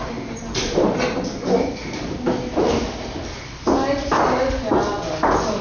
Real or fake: real